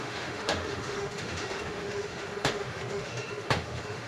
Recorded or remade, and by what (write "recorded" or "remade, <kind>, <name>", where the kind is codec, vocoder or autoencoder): remade, autoencoder, DAC-VAE